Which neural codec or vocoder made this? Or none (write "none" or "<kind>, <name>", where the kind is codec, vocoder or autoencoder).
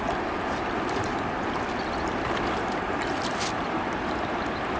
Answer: none